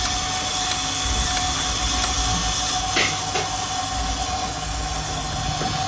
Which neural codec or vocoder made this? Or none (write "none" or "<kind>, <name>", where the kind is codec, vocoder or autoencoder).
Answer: none